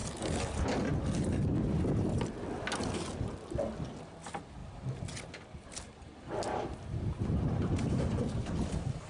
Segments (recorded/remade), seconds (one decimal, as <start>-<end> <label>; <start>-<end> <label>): 0.0-9.1 recorded